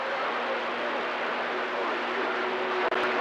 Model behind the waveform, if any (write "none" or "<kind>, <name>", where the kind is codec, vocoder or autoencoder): none